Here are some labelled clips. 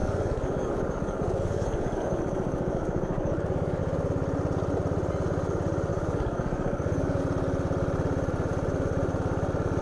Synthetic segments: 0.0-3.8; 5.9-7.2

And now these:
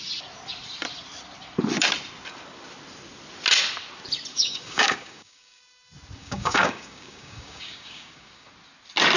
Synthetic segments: 4.3-5.6; 6.2-8.5

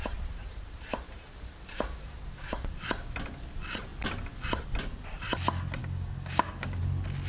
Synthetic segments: 5.8-6.8